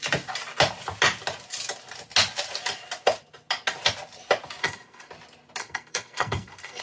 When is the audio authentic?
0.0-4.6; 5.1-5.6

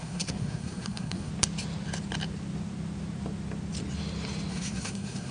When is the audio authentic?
1.3-4.5